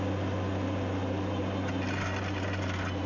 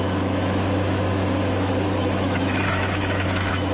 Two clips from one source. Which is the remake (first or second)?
second